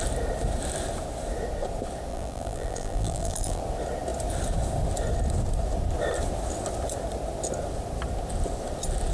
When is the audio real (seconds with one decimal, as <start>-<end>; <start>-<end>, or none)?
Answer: 0.0-2.1; 3.6-9.1